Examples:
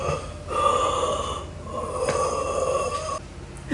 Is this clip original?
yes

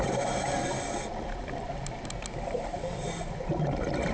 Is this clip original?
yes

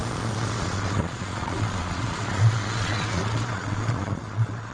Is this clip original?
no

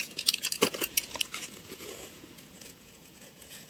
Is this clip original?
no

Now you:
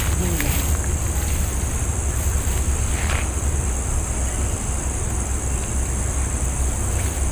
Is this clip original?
yes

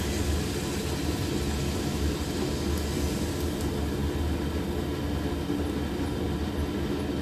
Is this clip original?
yes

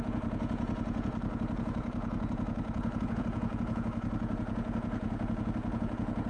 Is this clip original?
no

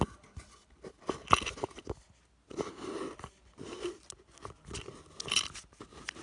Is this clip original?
yes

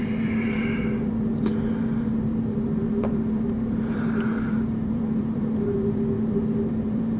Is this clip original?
no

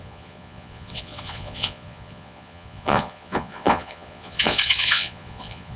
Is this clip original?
no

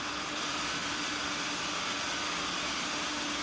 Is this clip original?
yes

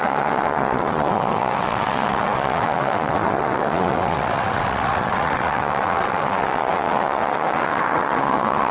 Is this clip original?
no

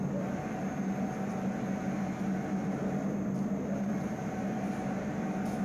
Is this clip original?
yes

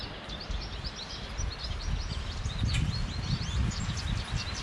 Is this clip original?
yes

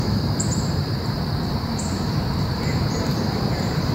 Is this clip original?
no